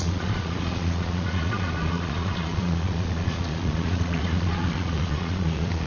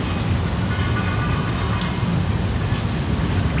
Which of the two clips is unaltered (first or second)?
second